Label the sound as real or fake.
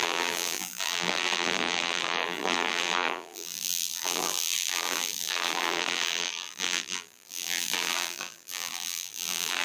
fake